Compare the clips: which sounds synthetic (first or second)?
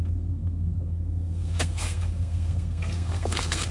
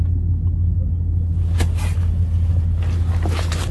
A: first